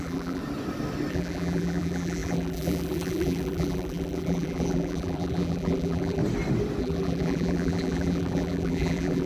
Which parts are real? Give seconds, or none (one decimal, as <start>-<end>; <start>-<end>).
0.4-1.1; 6.2-6.8